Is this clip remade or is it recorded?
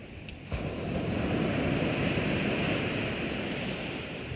recorded